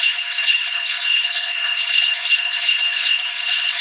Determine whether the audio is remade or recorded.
remade